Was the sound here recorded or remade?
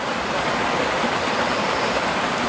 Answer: recorded